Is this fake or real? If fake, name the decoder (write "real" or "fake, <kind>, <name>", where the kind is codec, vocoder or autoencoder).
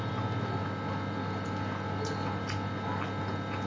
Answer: real